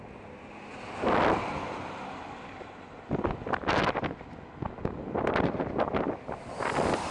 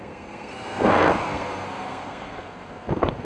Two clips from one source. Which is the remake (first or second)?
second